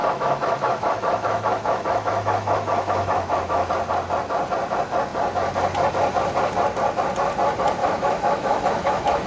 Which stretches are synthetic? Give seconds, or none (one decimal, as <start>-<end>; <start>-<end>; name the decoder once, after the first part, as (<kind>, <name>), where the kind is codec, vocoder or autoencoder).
0.0-3.7 (autoencoder, DAC-VAE); 7.8-9.3